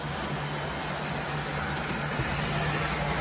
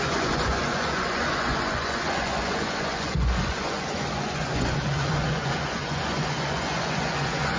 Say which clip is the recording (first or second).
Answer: first